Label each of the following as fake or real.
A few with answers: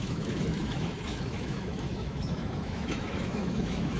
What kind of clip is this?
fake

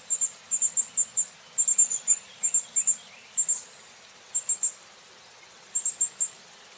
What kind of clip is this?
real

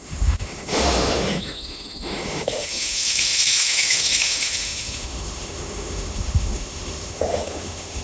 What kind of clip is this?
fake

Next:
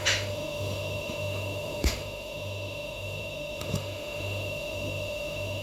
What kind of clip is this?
fake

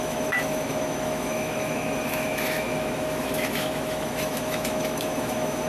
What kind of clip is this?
fake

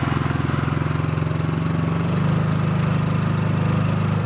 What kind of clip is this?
real